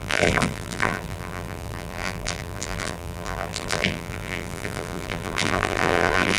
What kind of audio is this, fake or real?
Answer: fake